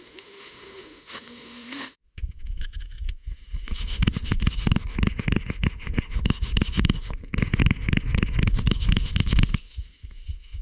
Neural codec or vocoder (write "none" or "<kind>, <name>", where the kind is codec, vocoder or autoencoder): autoencoder, DAC-VAE